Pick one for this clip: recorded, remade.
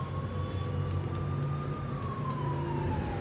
recorded